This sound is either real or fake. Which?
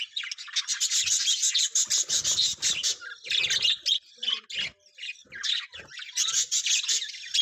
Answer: real